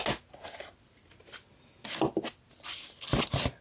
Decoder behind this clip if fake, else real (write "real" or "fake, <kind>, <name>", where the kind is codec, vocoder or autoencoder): real